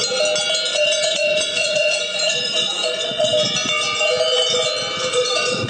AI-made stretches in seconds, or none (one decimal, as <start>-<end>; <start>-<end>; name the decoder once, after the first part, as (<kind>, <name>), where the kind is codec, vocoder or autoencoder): 0.7-3.3 (vocoder, Vocos); 5.1-5.7